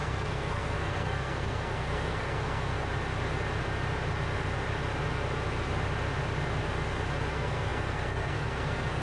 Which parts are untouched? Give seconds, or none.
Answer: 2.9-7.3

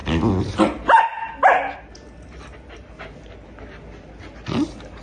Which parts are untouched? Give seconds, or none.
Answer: 0.0-5.0

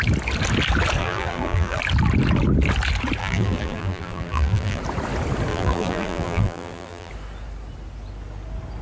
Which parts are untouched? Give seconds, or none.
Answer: 0.0-1.0; 1.8-3.2; 4.8-5.5; 7.1-8.8